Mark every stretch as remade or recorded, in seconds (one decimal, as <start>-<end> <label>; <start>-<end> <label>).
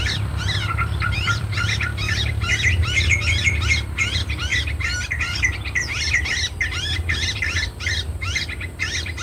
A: 0.0-9.2 remade